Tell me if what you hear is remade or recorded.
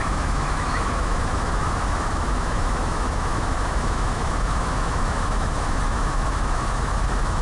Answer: remade